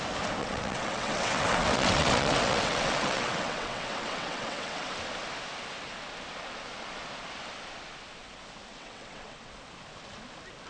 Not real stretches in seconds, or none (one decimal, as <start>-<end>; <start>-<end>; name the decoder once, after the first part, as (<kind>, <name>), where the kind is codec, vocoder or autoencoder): 0.4-4.9 (vocoder, WaveNeXt); 8.7-9.5